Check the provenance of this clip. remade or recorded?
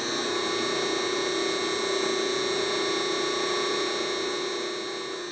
recorded